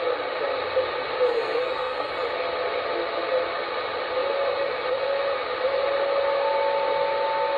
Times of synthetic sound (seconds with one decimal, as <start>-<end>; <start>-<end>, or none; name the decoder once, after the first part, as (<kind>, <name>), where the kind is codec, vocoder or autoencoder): 1.3-2.1 (codec, SNAC)

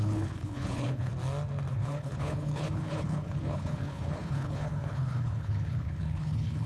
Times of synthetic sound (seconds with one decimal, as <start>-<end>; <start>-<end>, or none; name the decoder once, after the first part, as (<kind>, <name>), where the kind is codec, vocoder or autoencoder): 0.0-1.1 (codec, HILCodec); 1.7-6.7

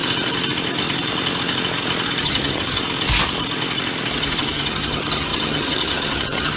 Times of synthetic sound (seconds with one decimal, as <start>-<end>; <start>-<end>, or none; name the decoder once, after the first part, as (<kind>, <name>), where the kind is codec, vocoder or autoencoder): 2.2-2.8 (vocoder, HiFi-GAN); 4.1-6.6

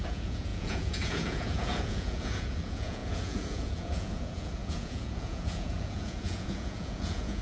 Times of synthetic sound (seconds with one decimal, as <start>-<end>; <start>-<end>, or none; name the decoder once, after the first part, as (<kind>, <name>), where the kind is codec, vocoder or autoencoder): 0.0-7.4 (vocoder, Vocos)